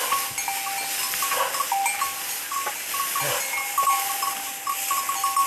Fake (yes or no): no